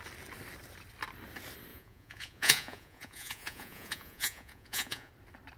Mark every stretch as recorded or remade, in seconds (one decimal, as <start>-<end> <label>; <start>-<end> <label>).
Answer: 0.0-1.7 recorded; 1.7-5.1 remade; 5.1-5.6 recorded